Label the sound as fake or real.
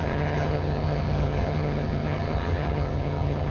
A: fake